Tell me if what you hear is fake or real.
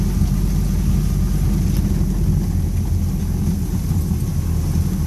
real